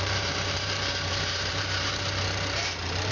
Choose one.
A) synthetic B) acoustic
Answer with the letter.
A